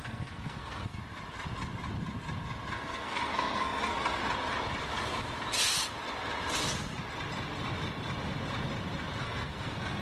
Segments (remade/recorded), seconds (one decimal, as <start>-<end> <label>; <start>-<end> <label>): 0.0-1.0 remade; 1.0-2.7 recorded; 2.7-4.2 remade; 4.2-9.2 recorded; 9.2-10.0 remade

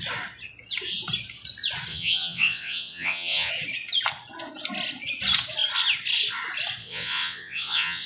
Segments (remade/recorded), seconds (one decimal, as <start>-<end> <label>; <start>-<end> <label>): 0.0-1.9 recorded; 1.9-3.5 remade; 3.5-6.8 recorded; 6.8-8.1 remade

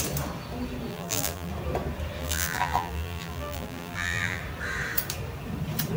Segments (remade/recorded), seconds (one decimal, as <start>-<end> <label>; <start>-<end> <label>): 0.0-0.9 recorded; 0.9-1.5 remade; 1.5-2.2 recorded; 2.2-4.4 remade; 4.4-6.0 recorded

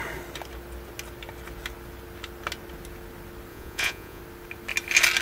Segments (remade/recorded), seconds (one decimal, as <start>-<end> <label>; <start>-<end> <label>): 0.0-3.5 recorded; 3.5-4.2 remade; 4.2-5.2 recorded

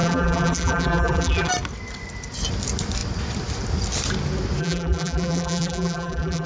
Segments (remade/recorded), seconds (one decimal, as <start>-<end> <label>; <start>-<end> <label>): 0.0-1.5 remade; 1.5-4.6 recorded; 4.6-6.5 remade